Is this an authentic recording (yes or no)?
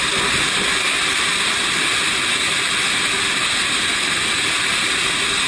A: yes